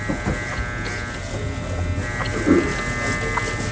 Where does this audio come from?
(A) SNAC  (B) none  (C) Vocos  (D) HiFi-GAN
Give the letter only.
B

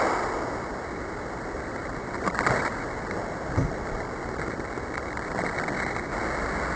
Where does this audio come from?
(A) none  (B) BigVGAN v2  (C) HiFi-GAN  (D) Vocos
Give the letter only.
A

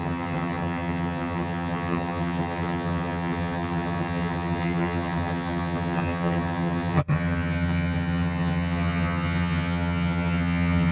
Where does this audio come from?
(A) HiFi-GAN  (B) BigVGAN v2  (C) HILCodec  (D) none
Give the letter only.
A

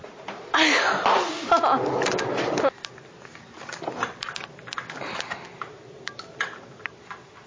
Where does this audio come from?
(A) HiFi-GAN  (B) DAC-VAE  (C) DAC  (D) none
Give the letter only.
D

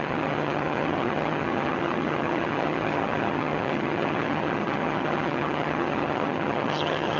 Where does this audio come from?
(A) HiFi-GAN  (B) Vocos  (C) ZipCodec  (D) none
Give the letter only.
A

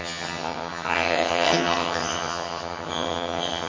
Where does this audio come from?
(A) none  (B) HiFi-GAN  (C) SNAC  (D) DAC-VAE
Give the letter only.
B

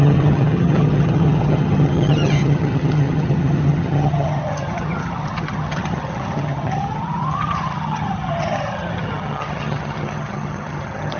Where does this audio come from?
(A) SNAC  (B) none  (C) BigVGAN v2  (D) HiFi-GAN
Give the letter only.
D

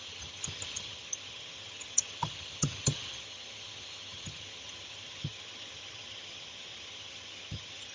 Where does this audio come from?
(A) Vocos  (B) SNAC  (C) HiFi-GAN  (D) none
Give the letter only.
C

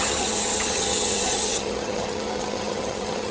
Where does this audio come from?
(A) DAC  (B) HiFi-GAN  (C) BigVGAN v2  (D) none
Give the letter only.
B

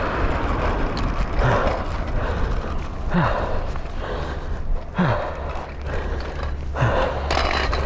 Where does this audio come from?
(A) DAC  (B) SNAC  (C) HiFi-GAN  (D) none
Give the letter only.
D